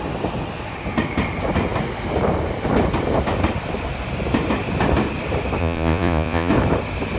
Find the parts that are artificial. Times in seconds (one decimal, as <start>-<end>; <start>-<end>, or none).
5.6-6.5

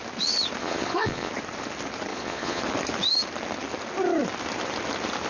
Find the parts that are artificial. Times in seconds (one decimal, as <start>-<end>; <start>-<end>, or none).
0.6-1.3; 2.1-2.6

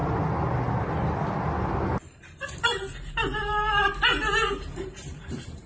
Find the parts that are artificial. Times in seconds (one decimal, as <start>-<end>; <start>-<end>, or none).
2.0-5.7

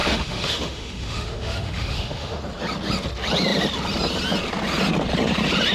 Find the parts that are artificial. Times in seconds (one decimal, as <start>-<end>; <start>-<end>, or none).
0.0-2.4

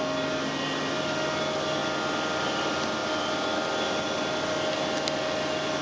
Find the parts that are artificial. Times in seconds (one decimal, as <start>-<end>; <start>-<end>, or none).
none